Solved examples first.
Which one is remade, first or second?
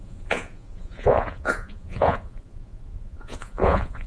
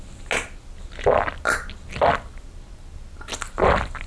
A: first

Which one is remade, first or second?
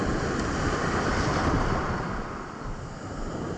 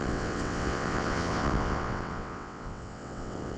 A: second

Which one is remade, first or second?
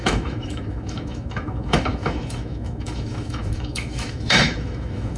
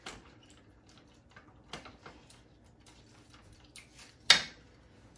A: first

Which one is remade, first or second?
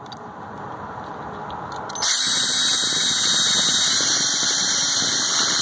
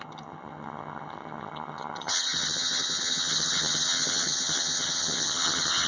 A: second